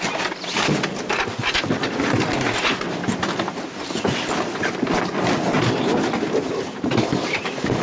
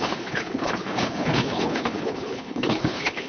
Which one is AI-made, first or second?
second